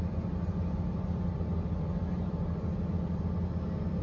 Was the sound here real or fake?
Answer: fake